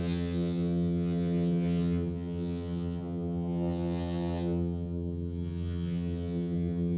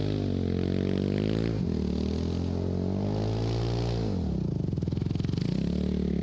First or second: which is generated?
first